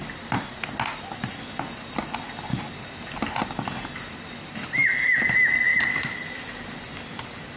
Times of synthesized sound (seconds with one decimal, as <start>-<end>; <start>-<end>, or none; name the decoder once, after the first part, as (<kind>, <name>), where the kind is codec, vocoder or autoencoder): none